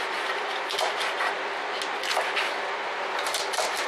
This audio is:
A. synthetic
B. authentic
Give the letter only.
B